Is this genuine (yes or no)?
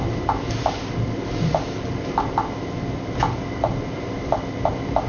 yes